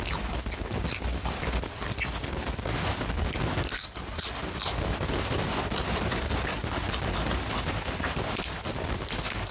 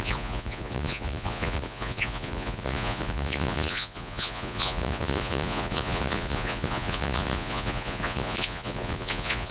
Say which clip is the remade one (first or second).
second